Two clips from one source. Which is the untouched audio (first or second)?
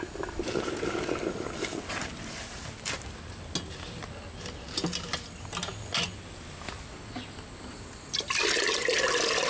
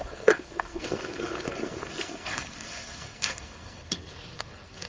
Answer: first